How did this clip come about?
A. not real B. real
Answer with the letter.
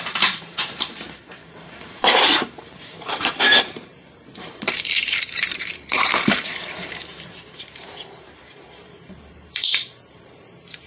A